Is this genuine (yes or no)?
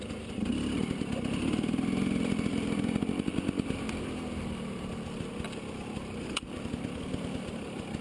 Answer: no